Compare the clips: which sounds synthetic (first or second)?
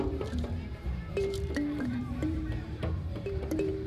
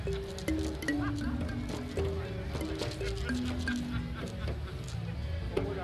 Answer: first